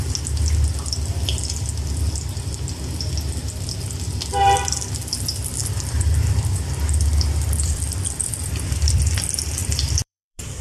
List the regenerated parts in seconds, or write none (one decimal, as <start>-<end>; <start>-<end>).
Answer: 5.6-9.0; 9.6-10.6